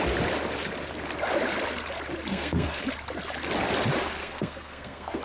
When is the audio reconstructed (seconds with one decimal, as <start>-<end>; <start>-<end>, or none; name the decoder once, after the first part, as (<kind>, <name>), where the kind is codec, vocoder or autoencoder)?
2.3-2.9 (codec, SNAC); 4.2-5.2